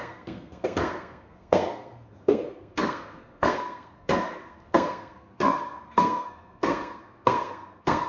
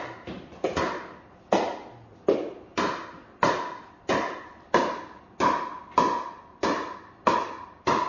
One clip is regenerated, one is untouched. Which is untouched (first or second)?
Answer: second